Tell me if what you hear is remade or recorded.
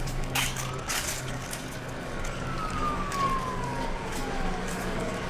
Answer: remade